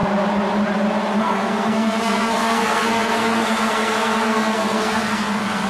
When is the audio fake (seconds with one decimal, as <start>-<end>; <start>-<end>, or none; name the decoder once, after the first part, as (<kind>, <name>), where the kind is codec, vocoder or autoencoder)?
1.2-5.7 (codec, SNAC)